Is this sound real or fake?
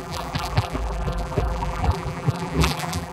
fake